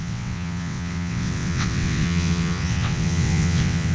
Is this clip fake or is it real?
fake